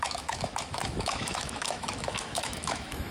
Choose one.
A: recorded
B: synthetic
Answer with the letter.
B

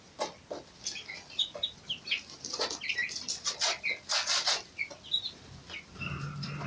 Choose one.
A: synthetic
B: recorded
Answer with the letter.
B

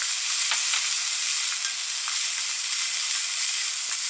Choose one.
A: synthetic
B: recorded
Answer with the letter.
B